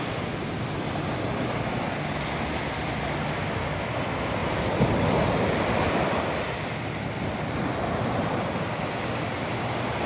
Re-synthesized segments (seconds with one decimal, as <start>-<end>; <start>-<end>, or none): none